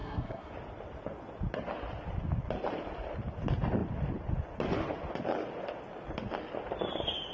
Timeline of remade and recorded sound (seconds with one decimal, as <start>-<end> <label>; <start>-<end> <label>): 0.0-0.5 remade; 0.5-7.3 recorded